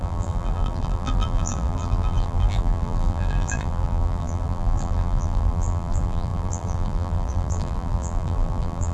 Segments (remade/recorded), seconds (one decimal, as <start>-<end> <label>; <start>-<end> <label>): 0.0-8.9 remade